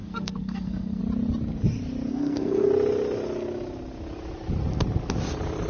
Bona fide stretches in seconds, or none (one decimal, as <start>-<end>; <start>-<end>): 1.0-2.1; 2.7-5.7